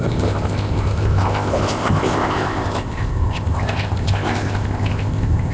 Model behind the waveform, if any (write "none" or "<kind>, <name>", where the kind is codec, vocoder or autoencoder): codec, ZipCodec